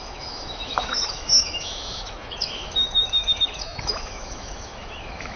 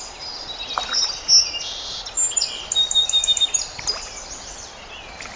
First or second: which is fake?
first